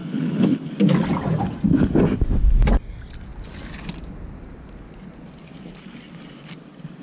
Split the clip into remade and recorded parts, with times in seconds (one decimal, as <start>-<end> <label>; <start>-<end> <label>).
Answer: 0.0-0.7 remade; 0.7-7.0 recorded